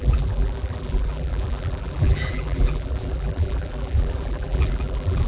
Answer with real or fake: fake